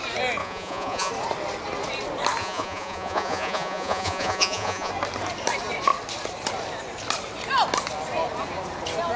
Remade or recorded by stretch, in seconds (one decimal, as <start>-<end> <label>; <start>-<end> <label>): 0.0-0.4 recorded; 0.4-1.1 remade; 1.1-2.4 recorded; 2.4-4.9 remade; 4.9-9.2 recorded